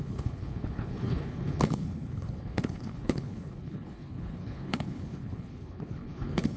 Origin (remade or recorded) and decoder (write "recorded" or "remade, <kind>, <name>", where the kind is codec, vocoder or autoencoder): remade, codec, HILCodec